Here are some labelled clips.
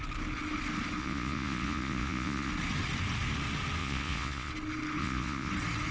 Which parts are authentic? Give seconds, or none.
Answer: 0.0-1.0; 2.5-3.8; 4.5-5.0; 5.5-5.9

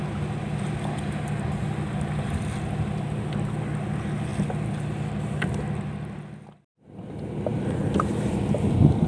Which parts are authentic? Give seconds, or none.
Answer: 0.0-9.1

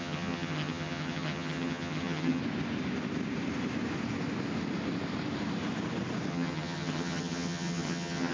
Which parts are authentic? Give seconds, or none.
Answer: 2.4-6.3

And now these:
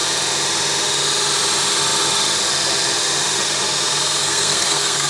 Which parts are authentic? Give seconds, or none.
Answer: 0.0-4.2